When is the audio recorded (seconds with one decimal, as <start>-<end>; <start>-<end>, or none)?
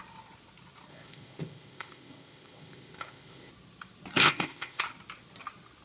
0.0-0.9; 3.5-4.2; 4.8-5.8